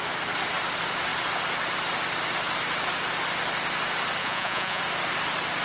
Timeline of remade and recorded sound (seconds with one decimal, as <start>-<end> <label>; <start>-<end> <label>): 0.0-4.2 recorded; 4.2-4.8 remade; 4.8-5.6 recorded